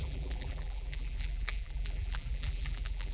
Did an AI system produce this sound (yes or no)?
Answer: yes